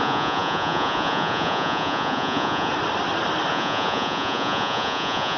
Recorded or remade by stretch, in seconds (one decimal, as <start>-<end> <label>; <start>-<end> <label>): 0.0-2.7 remade; 2.7-3.5 recorded; 3.5-5.4 remade